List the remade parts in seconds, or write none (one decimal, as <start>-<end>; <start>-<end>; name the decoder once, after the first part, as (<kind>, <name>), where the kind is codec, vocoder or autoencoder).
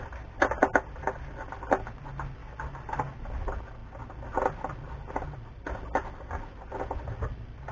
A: none